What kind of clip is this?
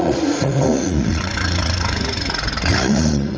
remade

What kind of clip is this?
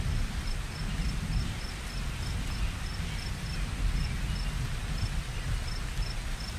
recorded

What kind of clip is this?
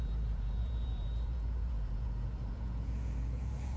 remade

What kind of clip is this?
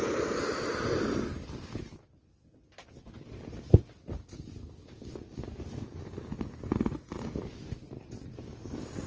recorded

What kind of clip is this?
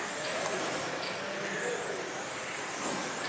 recorded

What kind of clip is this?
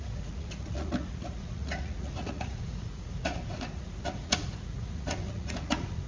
remade